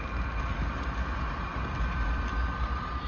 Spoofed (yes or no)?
no